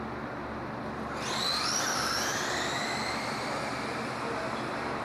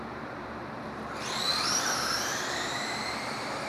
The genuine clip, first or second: first